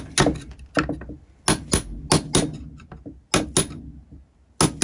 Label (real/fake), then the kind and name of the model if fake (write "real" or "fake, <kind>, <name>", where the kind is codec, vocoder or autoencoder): real